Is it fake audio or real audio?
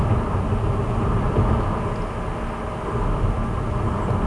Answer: real